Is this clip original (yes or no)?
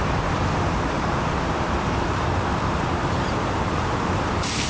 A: no